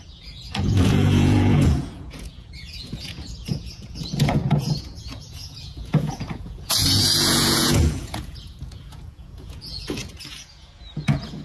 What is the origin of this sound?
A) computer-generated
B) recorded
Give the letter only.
A